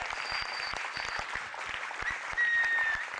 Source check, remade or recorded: recorded